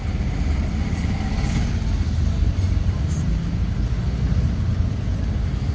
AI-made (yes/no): no